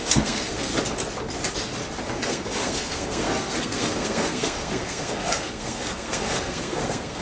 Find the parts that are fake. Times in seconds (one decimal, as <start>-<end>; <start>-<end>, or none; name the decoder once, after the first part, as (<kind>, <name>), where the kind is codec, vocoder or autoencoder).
0.0-0.7 (codec, SNAC); 2.1-7.2